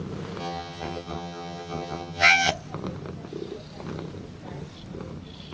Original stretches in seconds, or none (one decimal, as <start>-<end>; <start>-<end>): 0.0-0.4; 2.5-5.5

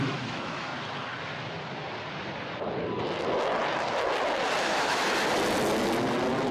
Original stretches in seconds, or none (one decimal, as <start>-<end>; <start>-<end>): 0.7-4.6; 5.0-6.5

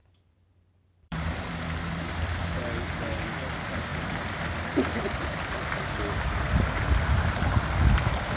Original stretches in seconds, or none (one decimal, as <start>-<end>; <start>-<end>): 2.4-8.4

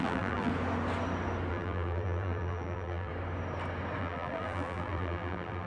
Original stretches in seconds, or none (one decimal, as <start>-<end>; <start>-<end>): 0.5-1.5; 3.1-4.0

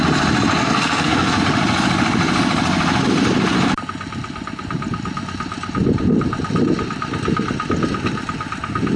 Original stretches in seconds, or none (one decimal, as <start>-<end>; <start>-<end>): 0.0-0.6; 1.4-9.0

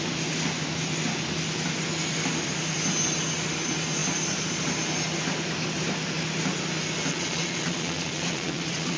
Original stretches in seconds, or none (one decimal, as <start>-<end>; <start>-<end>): 0.0-7.1

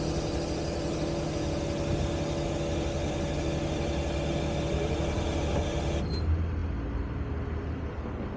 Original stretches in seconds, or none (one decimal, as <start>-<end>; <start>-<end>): 0.0-8.4

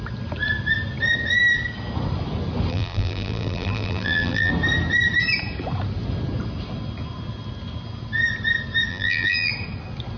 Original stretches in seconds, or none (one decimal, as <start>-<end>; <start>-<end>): 0.0-2.7; 4.5-8.9; 9.5-10.2